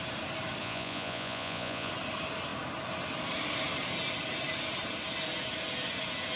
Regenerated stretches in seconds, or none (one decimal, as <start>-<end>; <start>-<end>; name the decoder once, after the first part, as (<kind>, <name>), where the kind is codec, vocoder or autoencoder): 0.6-1.9 (vocoder, Vocos)